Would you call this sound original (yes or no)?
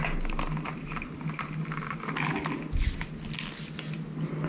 yes